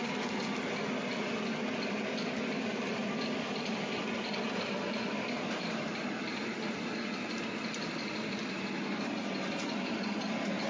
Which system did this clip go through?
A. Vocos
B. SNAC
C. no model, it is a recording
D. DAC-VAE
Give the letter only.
C